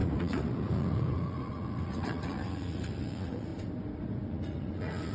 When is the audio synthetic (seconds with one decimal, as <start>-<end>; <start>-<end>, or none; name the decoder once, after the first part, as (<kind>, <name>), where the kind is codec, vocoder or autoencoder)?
0.0-3.5 (vocoder, Vocos); 4.3-5.1